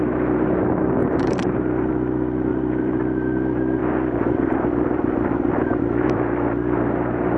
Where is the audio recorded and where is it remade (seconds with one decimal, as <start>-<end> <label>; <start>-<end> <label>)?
0.0-1.0 recorded; 1.0-1.9 remade; 1.9-2.5 recorded; 2.5-3.0 remade; 3.0-7.4 recorded